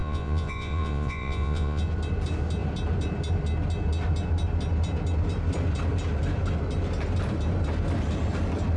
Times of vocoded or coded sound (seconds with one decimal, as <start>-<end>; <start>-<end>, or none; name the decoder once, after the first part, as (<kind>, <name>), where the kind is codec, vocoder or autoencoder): 0.0-1.8 (vocoder, Vocos)